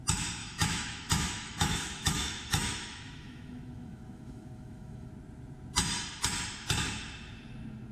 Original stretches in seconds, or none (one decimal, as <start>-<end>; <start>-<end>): 0.0-0.4; 5.1-7.9